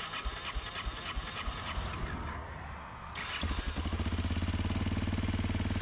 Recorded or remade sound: recorded